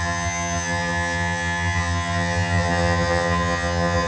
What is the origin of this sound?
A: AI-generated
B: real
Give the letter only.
A